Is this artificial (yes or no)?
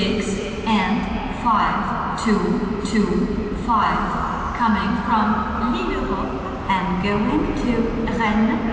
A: no